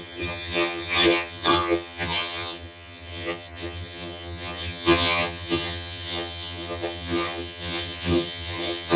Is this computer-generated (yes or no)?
yes